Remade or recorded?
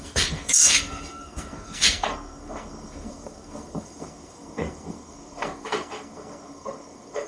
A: remade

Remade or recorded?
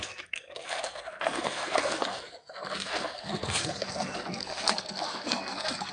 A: remade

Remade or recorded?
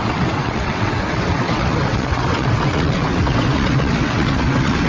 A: remade